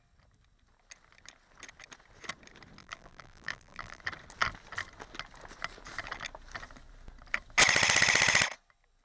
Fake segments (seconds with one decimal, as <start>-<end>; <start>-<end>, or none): 2.8-4.0